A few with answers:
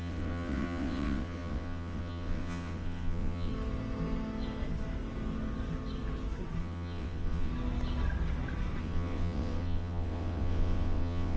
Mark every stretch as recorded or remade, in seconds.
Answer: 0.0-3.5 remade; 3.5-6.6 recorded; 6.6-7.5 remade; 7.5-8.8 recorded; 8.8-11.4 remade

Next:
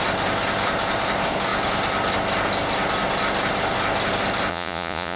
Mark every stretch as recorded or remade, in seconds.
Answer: 0.0-4.5 recorded; 4.5-5.2 remade

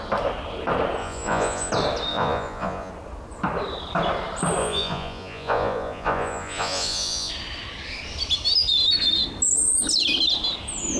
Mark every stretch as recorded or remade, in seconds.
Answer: 0.0-1.0 recorded; 1.0-1.7 remade; 1.7-2.1 recorded; 2.1-2.9 remade; 2.9-4.6 recorded; 4.6-7.3 remade; 7.3-11.0 recorded

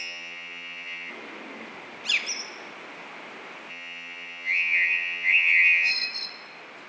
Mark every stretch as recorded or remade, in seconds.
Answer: 0.0-1.1 remade; 1.1-3.7 recorded; 3.7-5.9 remade; 5.9-6.9 recorded

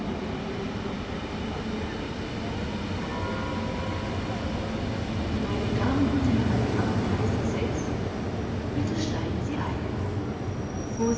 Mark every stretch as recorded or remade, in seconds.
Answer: 0.0-11.2 recorded